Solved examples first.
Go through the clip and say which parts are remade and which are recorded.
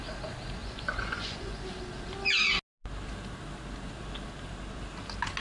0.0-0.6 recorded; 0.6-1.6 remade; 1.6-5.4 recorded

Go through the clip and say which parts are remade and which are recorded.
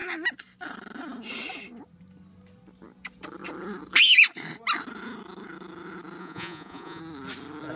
0.0-6.2 recorded; 6.2-7.0 remade; 7.0-7.8 recorded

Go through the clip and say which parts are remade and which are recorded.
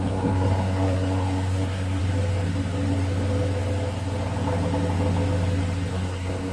0.0-2.0 remade; 2.0-5.9 recorded; 5.9-6.5 remade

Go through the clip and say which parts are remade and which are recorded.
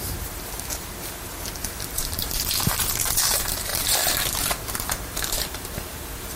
0.0-6.4 remade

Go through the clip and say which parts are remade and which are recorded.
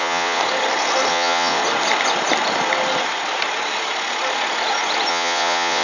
0.0-0.4 remade; 0.4-1.1 recorded; 1.1-1.6 remade; 1.6-5.1 recorded; 5.1-5.8 remade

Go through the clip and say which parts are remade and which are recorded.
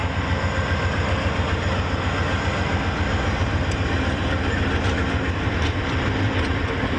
0.0-7.0 recorded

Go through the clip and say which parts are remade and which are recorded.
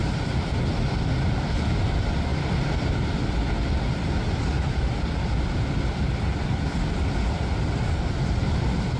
0.0-9.0 recorded